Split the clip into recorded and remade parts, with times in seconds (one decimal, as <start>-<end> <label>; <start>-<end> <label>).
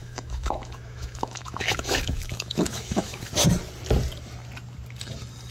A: 0.0-3.3 remade; 3.3-5.5 recorded